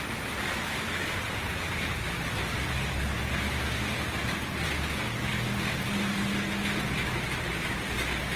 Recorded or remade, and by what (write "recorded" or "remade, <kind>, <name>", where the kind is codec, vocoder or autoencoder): recorded